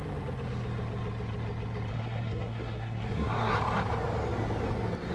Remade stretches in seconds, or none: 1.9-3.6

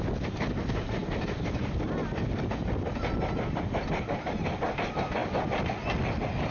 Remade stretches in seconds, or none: none